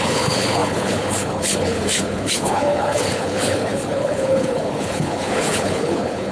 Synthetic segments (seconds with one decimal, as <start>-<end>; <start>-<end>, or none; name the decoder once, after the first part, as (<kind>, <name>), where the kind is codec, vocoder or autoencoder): 0.0-6.3 (codec, HILCodec)